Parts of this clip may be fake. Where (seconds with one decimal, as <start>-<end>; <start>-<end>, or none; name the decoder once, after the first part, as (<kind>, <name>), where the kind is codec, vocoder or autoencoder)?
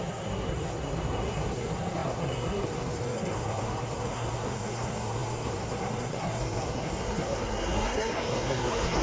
0.0-9.0 (codec, SNAC)